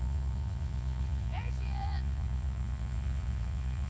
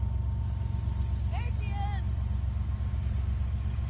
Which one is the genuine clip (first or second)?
second